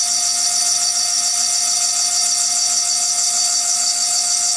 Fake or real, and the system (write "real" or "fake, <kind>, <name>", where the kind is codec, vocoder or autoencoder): real